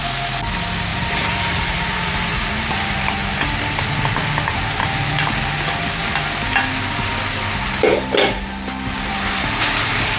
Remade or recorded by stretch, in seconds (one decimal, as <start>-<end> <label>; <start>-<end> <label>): 0.0-0.9 recorded; 0.9-3.1 remade; 3.1-9.1 recorded; 9.1-10.2 remade

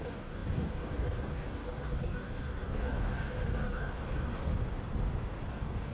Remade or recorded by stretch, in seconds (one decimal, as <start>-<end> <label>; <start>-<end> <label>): 0.0-4.5 remade; 4.5-5.5 recorded; 5.5-5.9 remade

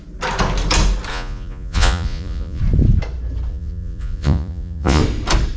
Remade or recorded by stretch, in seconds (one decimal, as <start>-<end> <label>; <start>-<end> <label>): 0.0-1.1 recorded; 1.1-2.6 remade; 2.6-3.5 recorded; 3.5-5.0 remade; 5.0-5.6 recorded